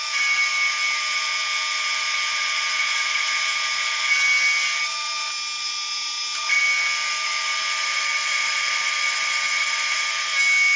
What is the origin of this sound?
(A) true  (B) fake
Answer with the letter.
A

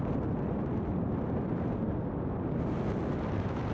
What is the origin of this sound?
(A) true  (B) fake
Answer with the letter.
A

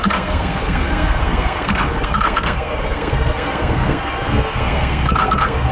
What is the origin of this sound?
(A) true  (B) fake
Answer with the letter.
B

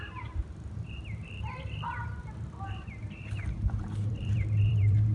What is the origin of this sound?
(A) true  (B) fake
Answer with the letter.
B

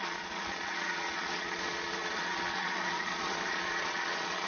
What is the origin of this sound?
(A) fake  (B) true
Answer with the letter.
A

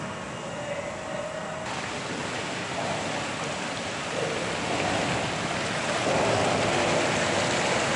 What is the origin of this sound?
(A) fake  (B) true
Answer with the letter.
B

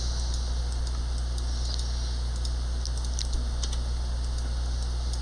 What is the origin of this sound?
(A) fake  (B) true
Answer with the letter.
B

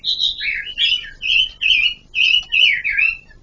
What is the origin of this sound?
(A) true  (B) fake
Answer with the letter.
A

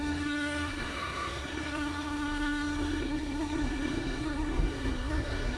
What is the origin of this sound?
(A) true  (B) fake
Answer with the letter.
B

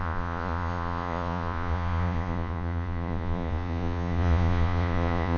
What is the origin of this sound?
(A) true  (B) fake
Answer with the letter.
B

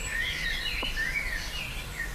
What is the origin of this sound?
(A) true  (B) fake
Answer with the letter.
A